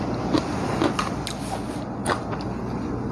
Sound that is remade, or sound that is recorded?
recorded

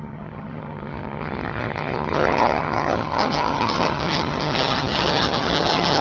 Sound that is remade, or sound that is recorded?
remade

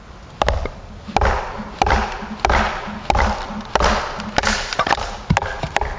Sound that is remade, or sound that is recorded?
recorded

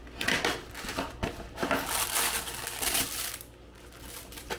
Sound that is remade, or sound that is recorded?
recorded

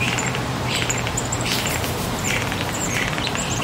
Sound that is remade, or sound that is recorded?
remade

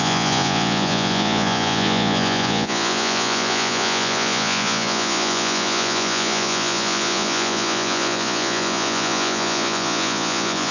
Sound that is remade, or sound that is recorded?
remade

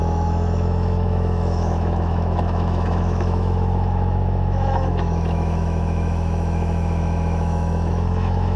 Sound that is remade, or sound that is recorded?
remade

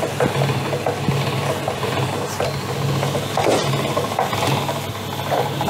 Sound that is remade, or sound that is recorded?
recorded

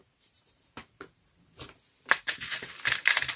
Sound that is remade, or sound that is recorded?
remade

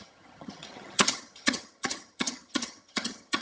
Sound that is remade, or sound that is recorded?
remade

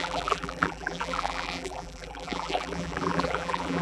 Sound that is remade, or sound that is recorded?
remade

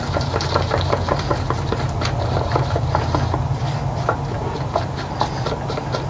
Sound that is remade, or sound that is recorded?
recorded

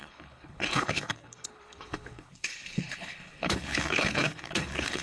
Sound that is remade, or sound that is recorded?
remade